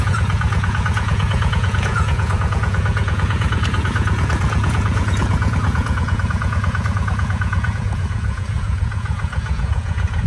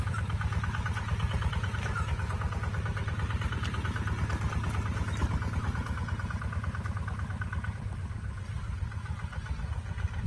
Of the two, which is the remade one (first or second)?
first